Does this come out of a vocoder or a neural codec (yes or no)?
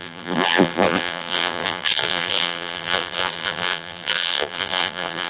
yes